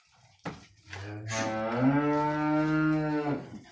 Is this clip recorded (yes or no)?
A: yes